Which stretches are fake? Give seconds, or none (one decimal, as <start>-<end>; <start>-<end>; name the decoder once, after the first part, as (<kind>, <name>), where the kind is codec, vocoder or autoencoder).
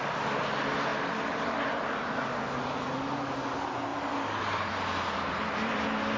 3.9-5.8 (vocoder, BigVGAN v2)